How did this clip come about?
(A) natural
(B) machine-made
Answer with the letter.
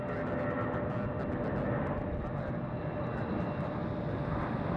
A